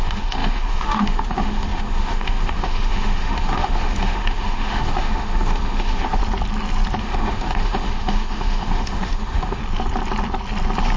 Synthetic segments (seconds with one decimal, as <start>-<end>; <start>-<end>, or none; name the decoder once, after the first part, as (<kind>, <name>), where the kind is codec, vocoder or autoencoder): 0.0-6.2 (autoencoder, DAC-VAE); 7.0-9.6